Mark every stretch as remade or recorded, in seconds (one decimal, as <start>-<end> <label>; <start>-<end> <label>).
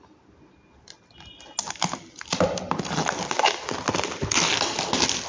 0.0-5.3 recorded